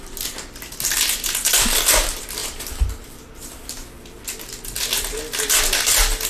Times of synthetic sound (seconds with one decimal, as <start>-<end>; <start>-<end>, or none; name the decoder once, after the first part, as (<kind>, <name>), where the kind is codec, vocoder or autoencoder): 2.4-4.2 (vocoder, BigVGAN v2)